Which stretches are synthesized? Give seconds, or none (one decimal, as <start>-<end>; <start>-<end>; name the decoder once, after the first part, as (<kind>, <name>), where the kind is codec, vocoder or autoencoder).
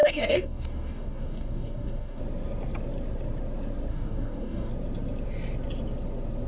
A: 0.0-2.2 (codec, DAC); 3.9-4.7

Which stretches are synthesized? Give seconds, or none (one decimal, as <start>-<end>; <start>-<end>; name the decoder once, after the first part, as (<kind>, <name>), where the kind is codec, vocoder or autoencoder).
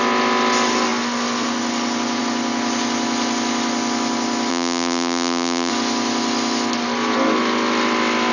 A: 4.5-5.7 (vocoder, BigVGAN v2)